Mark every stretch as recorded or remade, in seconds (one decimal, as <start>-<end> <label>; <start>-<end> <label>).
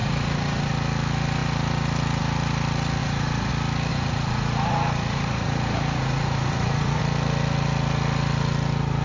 0.0-0.7 remade; 0.7-3.0 recorded; 3.0-3.5 remade; 3.5-3.9 recorded; 3.9-7.0 remade; 7.0-9.0 recorded